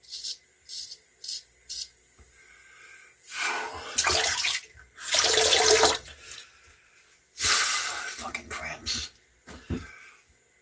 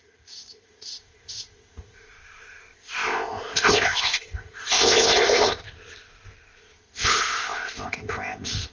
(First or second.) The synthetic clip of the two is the second